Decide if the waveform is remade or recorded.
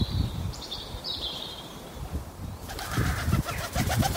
remade